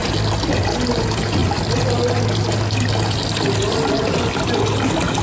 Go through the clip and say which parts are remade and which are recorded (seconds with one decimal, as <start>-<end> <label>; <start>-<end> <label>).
0.0-5.2 recorded